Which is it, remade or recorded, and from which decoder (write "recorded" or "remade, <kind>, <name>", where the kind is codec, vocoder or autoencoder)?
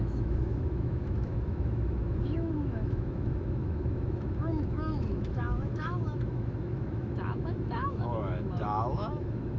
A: remade, autoencoder, DAC-VAE